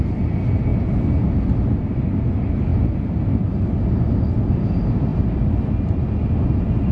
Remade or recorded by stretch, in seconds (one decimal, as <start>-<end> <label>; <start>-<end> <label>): 0.0-6.9 recorded